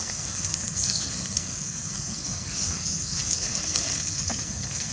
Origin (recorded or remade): remade